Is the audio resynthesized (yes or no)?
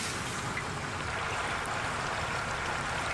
no